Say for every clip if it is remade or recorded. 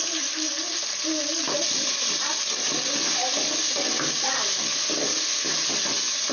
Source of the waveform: recorded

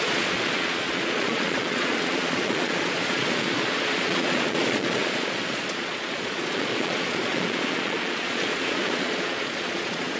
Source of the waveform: remade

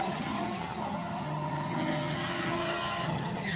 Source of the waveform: remade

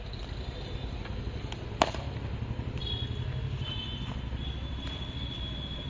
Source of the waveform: recorded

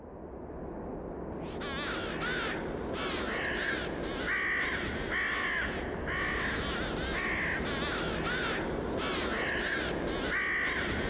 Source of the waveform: recorded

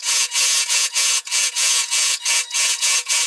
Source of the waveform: remade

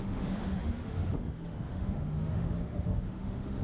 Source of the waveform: remade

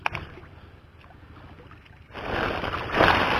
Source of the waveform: recorded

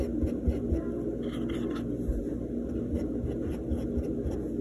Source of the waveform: recorded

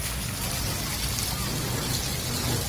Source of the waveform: recorded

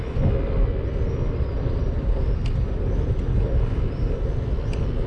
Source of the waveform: recorded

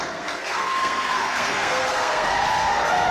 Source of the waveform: remade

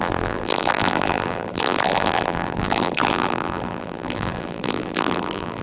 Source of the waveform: remade